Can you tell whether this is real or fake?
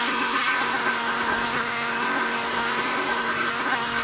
fake